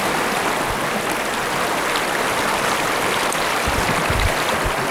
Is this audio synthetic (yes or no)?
no